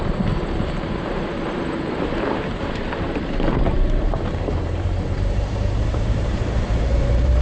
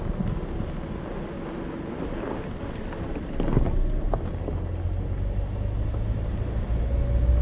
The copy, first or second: first